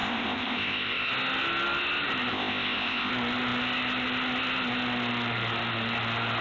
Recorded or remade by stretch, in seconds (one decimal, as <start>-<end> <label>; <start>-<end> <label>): 0.0-1.1 remade; 1.1-2.3 recorded; 2.3-3.1 remade; 3.1-6.4 recorded